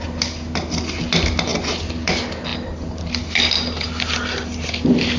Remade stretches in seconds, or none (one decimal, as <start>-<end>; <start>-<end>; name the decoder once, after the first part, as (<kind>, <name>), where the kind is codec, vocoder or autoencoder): 0.0-5.2 (vocoder, BigVGAN v2)